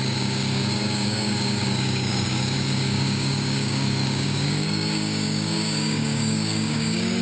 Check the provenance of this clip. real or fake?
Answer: fake